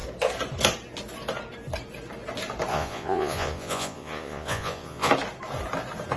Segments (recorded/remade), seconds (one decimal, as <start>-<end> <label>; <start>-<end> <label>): 0.0-2.7 recorded; 2.7-5.1 remade; 5.1-6.2 recorded